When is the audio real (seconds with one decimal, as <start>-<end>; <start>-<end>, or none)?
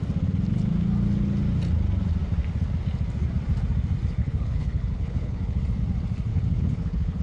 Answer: 0.0-4.2; 5.6-6.3